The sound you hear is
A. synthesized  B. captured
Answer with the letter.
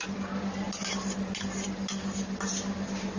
B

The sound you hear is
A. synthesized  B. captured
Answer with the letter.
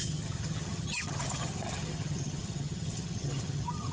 A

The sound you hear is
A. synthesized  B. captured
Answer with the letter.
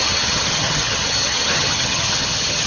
A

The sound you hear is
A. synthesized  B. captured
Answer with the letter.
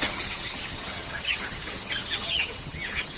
A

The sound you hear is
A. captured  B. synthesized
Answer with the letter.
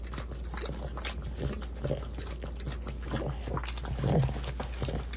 A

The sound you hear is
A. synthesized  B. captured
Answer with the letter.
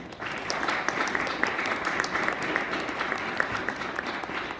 B